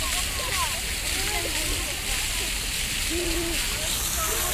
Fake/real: real